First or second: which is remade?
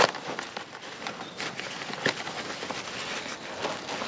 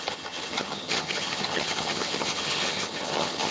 second